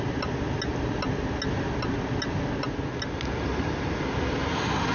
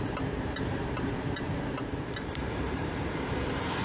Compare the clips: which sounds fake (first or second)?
second